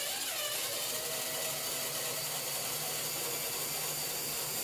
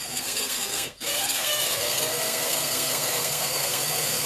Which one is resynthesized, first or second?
second